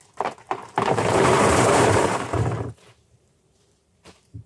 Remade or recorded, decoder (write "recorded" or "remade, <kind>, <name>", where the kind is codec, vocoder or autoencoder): remade, vocoder, BigVGAN v2